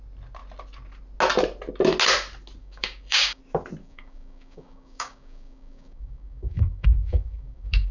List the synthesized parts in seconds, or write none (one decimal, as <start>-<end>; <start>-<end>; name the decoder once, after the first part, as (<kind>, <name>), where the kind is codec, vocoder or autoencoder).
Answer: 2.6-3.4 (codec, DAC); 3.8-7.9